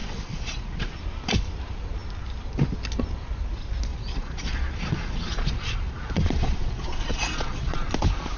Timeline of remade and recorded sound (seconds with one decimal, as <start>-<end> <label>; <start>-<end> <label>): 0.0-1.0 remade; 1.0-3.9 recorded; 3.9-7.9 remade; 7.9-8.4 recorded